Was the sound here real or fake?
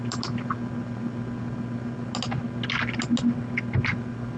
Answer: real